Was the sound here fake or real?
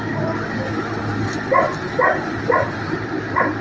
real